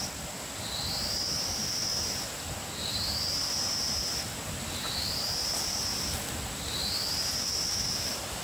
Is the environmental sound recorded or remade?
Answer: recorded